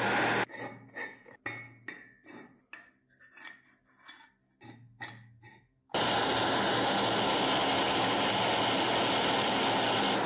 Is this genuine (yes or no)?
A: yes